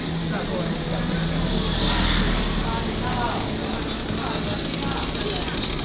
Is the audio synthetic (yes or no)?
no